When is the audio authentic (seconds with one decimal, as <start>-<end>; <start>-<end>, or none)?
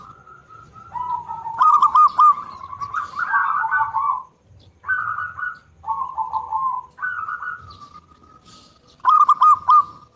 0.0-10.2